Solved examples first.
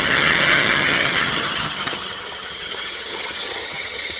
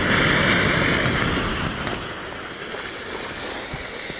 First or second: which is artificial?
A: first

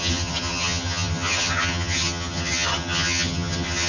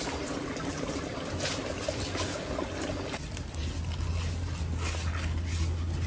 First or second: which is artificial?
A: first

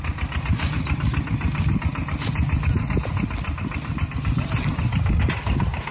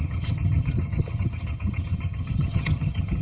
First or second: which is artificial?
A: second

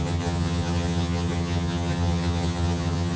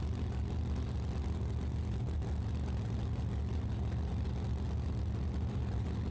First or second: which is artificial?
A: first